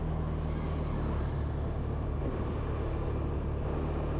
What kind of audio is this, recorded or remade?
recorded